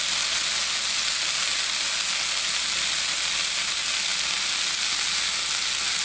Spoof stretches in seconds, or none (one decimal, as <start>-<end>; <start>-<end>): none